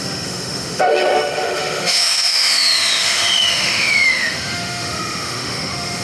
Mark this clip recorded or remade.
remade